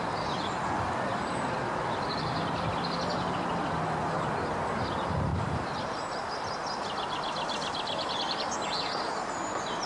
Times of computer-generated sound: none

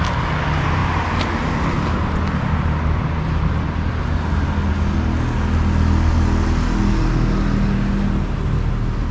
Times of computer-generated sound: none